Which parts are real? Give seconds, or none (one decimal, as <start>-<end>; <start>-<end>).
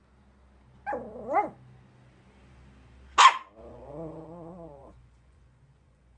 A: 0.0-3.7